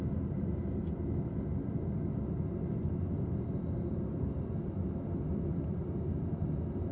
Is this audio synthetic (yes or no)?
no